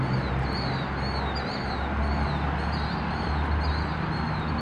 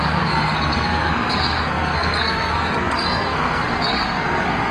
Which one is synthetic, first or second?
second